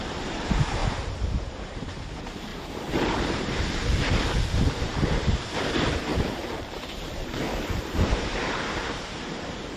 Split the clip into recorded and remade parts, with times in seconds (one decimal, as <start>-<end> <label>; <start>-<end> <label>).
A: 0.0-0.8 remade; 0.8-1.7 recorded; 1.7-9.8 remade